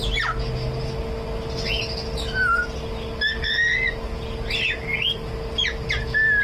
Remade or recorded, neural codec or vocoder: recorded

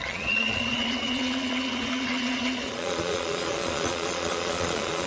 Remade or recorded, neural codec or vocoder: remade, vocoder, Vocos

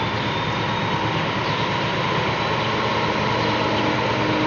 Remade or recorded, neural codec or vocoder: recorded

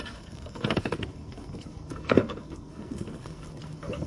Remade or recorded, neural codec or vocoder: remade, codec, SNAC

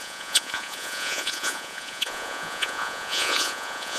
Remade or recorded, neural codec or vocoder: remade, vocoder, Vocos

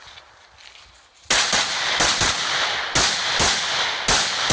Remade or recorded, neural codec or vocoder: recorded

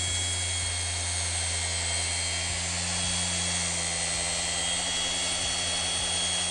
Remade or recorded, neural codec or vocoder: recorded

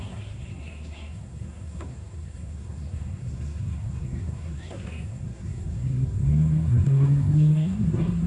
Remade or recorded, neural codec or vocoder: remade, codec, SNAC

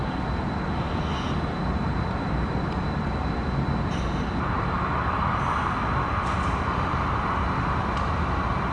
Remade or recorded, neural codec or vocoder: recorded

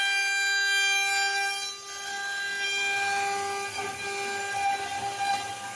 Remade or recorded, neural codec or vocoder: recorded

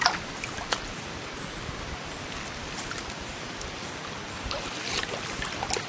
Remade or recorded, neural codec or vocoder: recorded